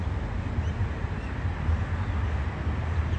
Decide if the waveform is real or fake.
real